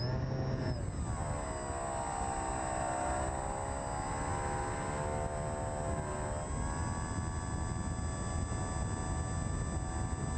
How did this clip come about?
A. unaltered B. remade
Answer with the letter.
A